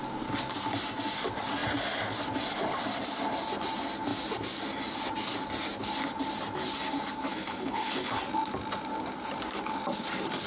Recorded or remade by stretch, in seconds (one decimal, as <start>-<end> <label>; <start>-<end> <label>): 0.0-7.3 recorded; 7.3-8.2 remade; 8.2-10.5 recorded